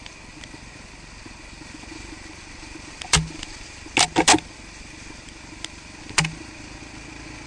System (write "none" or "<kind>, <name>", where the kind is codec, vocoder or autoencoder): none